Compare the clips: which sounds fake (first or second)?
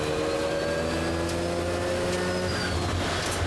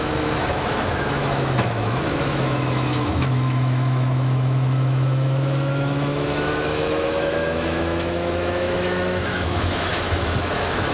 second